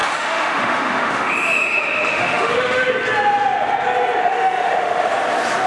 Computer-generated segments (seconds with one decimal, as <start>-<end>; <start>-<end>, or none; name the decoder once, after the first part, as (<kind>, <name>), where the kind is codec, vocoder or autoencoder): 0.0-2.9 (autoencoder, DAC-VAE); 4.2-5.0